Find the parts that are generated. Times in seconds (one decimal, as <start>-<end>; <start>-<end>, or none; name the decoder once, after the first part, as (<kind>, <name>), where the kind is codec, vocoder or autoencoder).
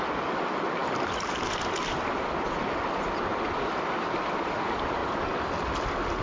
none